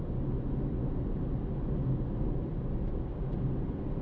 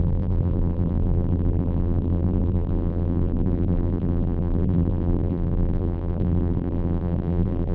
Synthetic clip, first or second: second